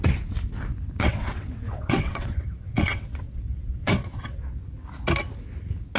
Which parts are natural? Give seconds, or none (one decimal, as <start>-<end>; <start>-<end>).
0.0-1.0; 4.6-6.0